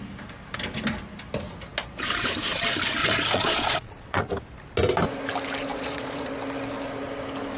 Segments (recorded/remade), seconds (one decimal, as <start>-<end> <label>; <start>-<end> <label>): 0.0-3.0 recorded; 3.0-4.3 remade; 4.3-5.7 recorded; 5.7-6.3 remade; 6.3-7.6 recorded